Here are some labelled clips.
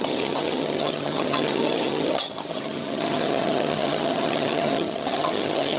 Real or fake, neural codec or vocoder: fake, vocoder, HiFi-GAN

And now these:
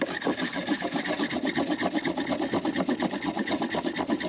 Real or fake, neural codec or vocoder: real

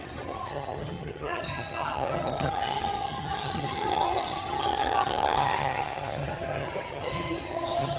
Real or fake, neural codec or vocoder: fake, vocoder, HiFi-GAN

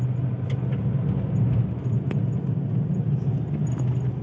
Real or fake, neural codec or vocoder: real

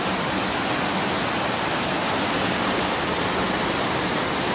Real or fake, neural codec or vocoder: real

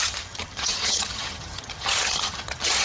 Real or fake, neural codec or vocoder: fake, vocoder, HiFi-GAN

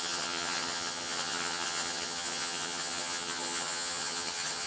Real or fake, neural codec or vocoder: fake, vocoder, HiFi-GAN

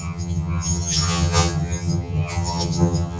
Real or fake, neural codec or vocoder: fake, vocoder, HiFi-GAN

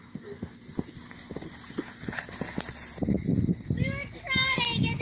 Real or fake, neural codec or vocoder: real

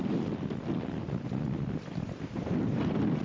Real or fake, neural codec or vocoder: real